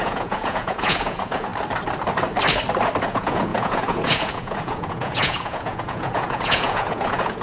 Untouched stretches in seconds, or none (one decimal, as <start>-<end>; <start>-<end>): 1.5-3.0